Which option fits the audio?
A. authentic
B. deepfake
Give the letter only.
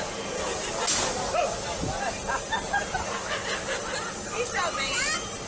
A